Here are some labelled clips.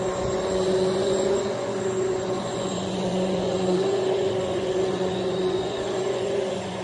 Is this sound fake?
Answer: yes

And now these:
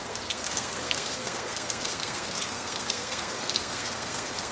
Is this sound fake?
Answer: yes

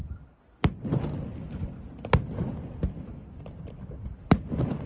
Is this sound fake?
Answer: no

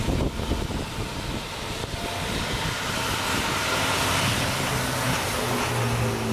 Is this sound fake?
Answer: no